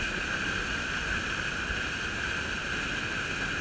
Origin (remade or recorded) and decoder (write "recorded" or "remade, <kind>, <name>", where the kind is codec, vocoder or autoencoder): recorded